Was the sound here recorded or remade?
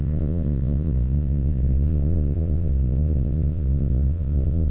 remade